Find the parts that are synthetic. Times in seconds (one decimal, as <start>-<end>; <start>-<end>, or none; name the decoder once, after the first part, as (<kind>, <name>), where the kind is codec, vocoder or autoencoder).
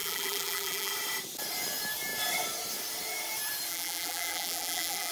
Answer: 0.0-0.9 (vocoder, BigVGAN v2); 3.7-5.1